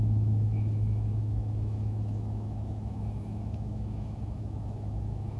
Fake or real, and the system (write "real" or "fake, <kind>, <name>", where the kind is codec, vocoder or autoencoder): fake, autoencoder, DAC-VAE